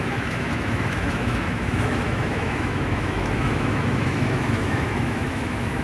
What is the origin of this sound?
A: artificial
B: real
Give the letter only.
A